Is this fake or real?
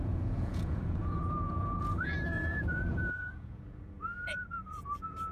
fake